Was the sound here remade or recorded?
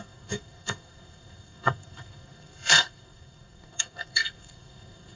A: remade